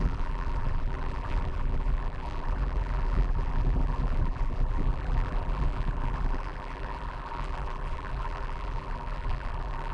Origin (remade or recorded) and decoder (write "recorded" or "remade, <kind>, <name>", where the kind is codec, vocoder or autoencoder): remade, vocoder, BigVGAN v2